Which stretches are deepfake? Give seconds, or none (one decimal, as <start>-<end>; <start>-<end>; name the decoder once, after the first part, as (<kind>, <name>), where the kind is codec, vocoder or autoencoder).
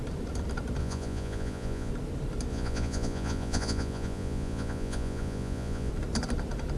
0.8-1.9 (vocoder, Vocos); 2.5-5.9